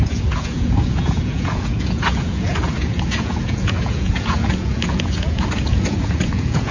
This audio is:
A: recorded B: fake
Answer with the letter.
B